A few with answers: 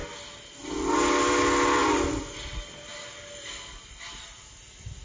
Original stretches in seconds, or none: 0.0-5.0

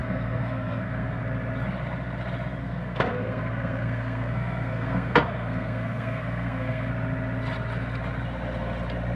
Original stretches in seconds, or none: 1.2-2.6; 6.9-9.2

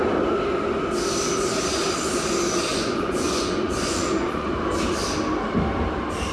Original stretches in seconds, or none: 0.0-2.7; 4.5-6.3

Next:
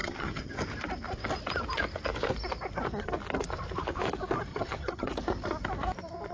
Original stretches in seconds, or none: 0.5-4.5; 5.1-6.3

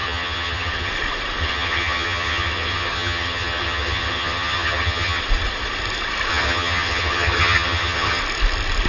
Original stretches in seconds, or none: 0.9-1.4; 5.2-6.3; 8.2-8.9

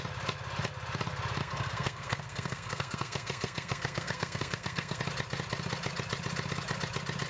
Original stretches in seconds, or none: 0.0-1.4; 5.0-7.3

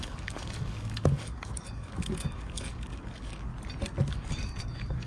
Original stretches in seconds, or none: 3.5-4.1

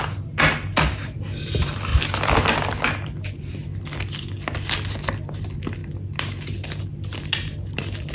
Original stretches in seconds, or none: 0.0-8.1